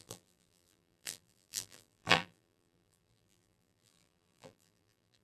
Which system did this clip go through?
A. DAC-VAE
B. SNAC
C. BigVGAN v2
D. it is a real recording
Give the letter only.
C